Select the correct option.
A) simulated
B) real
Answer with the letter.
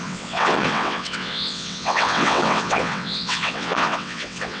A